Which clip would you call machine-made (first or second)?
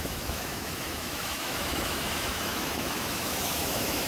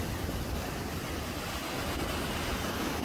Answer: first